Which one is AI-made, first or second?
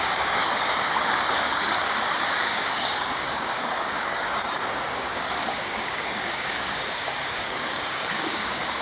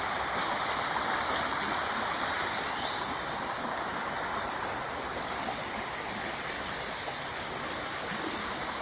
first